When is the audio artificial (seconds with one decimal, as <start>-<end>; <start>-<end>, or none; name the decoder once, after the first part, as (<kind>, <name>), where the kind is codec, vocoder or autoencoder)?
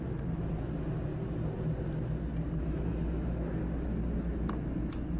none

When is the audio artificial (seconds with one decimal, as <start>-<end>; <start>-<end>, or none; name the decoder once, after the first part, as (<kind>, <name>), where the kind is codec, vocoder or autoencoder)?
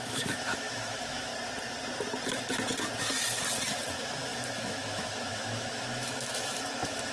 0.0-1.3 (autoencoder, DAC-VAE); 3.9-7.1